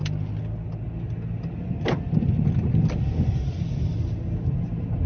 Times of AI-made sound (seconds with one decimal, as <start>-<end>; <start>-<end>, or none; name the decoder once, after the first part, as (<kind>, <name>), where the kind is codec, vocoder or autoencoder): none